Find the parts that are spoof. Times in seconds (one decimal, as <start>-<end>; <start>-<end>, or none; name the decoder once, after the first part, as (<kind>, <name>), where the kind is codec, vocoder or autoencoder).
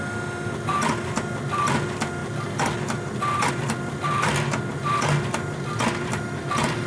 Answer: none